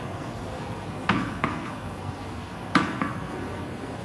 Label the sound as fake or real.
fake